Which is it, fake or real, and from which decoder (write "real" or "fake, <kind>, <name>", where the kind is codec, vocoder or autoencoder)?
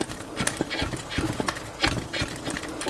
real